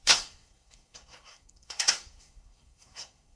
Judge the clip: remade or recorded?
remade